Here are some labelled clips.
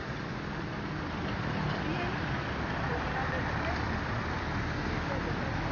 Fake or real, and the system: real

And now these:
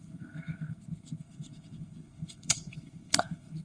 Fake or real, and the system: fake, codec, SNAC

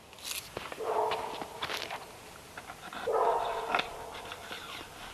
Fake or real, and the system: real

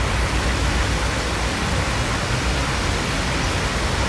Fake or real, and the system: real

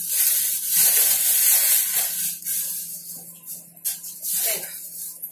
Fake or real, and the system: real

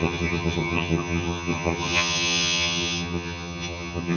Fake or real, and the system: fake, vocoder, HiFi-GAN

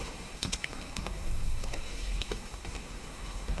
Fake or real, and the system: fake, codec, SNAC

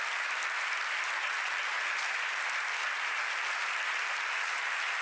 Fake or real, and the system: real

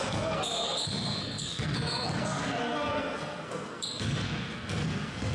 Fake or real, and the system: fake, codec, SNAC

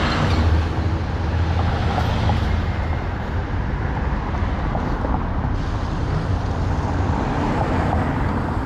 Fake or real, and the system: real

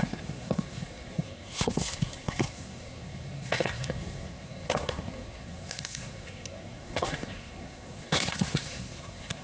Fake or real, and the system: fake, codec, SNAC